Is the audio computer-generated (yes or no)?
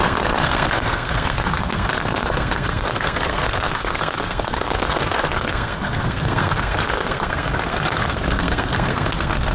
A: yes